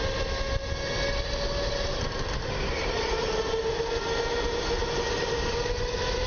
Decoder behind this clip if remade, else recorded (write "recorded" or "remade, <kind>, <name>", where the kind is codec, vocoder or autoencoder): recorded